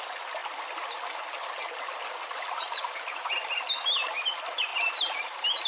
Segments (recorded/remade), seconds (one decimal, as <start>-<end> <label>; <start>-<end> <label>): 0.0-4.7 recorded; 4.7-5.7 remade